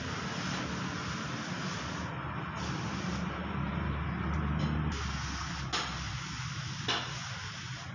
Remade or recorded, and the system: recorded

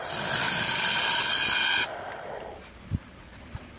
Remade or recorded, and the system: recorded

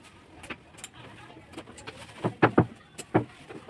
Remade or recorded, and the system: recorded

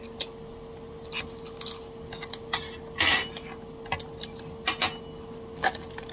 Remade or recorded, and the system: recorded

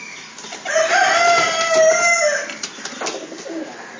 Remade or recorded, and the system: recorded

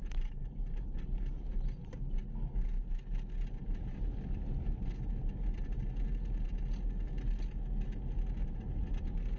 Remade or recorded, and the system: recorded